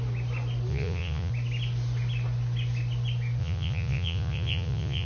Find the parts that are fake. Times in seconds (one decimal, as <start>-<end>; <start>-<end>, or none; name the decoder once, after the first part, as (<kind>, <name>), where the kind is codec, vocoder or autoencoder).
0.7-1.3 (vocoder, Vocos); 3.4-5.1

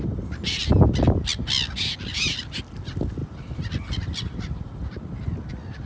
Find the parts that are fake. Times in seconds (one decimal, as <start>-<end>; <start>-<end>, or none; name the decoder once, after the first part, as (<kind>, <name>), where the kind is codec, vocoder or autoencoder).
none